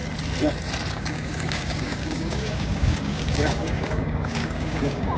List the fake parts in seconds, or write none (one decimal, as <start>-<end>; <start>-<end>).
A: 0.9-5.2